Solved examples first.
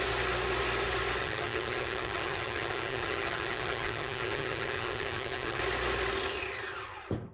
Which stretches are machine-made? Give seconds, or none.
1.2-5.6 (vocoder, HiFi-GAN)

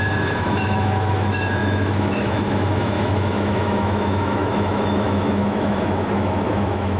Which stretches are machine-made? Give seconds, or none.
0.0-7.0 (autoencoder, DAC-VAE)

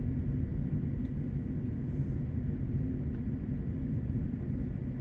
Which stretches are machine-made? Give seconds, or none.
none

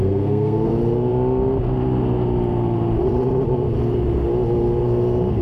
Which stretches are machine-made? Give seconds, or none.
0.0-0.7 (codec, SNAC)